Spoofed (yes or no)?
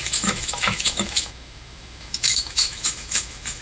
yes